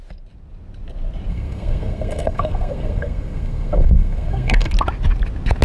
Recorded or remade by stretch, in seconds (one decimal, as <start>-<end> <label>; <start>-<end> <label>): 0.0-1.3 recorded; 1.3-4.7 remade; 4.7-5.6 recorded